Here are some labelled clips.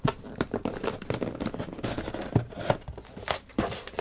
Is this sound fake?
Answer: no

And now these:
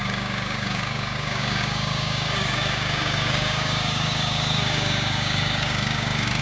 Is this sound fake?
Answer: yes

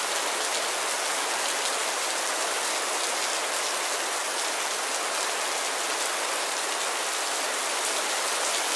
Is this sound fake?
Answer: no